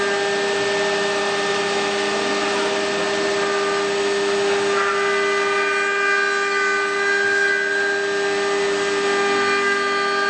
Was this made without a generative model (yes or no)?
yes